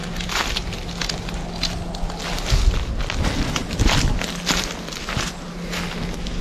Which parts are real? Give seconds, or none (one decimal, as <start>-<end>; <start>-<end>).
0.0-6.4